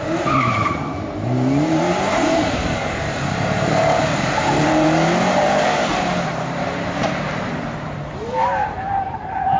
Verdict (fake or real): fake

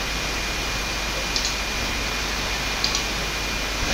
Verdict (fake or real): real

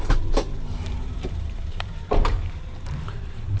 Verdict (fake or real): fake